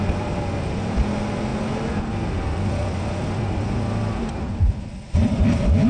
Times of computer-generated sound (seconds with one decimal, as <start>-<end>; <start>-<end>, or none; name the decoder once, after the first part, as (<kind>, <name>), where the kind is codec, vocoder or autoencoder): none

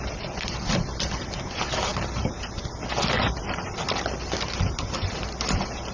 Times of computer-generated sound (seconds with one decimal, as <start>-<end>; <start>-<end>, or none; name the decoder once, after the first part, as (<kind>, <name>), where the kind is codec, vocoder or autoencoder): none

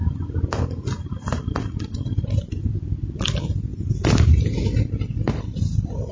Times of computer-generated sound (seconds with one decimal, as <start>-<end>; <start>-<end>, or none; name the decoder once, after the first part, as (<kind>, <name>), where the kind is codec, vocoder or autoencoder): none

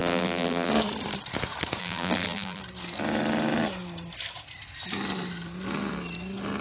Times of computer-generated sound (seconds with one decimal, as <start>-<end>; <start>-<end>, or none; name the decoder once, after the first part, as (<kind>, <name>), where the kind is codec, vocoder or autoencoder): 0.0-0.7 (vocoder, BigVGAN v2); 1.8-2.6